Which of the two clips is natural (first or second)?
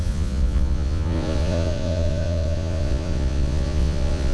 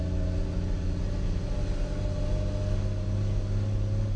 second